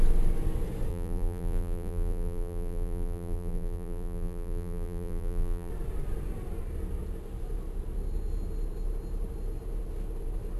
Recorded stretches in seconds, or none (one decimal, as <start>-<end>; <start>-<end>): 0.0-0.9; 5.7-10.6